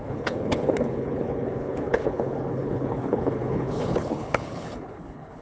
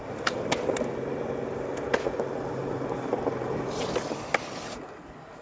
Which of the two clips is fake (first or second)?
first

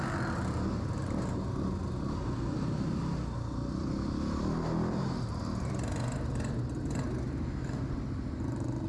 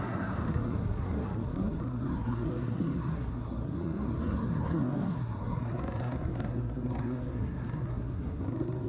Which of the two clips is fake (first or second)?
second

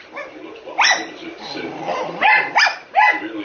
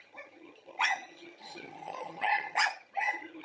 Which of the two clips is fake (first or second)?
second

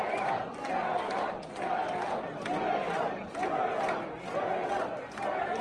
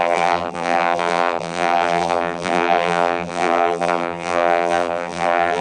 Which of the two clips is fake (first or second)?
second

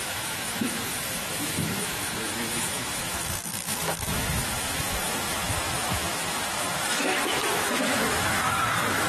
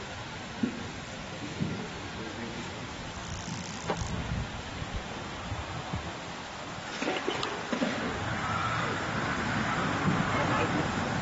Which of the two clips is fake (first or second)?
first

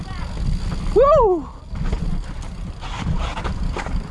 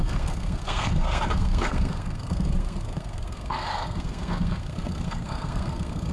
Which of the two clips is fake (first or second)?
second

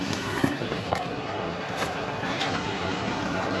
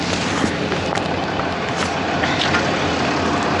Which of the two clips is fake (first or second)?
first